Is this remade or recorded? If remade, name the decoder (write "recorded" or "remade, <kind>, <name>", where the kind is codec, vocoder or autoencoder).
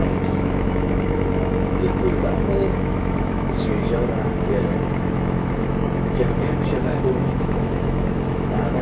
remade, autoencoder, DAC-VAE